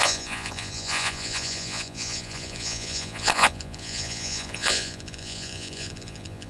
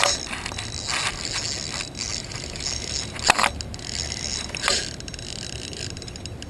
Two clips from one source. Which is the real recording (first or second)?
second